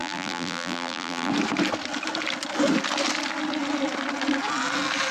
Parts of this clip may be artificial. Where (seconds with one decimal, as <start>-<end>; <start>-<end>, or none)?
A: 0.0-1.3